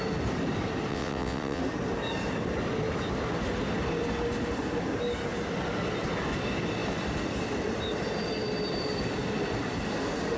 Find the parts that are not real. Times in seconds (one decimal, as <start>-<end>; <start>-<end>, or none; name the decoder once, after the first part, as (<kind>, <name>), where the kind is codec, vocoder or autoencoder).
0.9-1.6 (vocoder, WaveNeXt)